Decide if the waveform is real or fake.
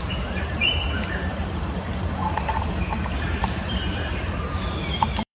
fake